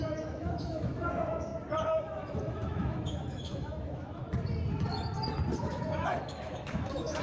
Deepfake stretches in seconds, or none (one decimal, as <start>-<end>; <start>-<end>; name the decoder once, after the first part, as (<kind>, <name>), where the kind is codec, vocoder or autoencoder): 0.0-1.5 (autoencoder, DAC-VAE); 2.0-4.2; 5.6-7.2